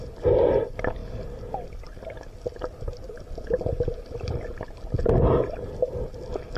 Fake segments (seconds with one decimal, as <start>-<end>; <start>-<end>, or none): none